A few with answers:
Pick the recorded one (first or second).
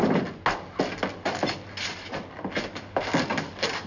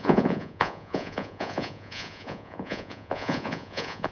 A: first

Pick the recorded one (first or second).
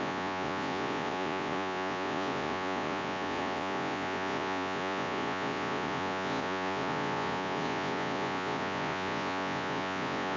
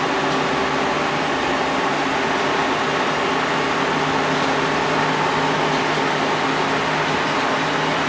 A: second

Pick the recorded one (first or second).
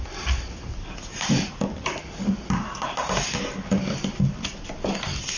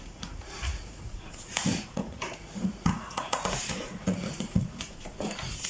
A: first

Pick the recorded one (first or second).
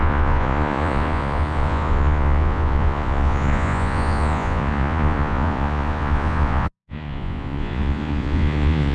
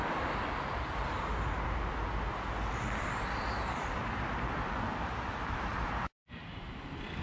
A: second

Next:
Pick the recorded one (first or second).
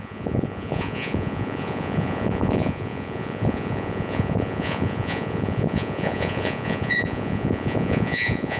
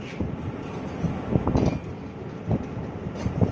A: second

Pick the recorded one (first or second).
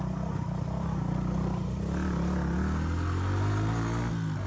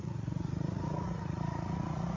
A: first